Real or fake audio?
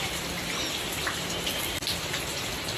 real